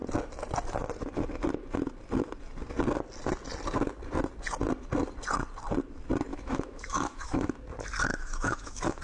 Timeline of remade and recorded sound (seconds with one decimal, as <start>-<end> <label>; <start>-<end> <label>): 0.0-6.3 recorded; 6.3-7.5 remade; 7.5-8.1 recorded; 8.1-9.0 remade